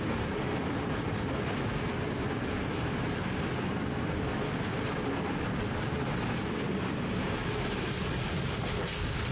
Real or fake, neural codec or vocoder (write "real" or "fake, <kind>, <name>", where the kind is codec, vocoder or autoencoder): real